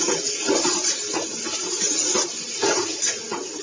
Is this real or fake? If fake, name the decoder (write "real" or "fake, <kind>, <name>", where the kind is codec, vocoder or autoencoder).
real